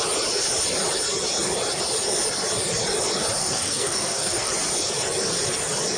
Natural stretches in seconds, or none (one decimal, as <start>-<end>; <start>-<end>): 0.0-3.4; 4.5-6.0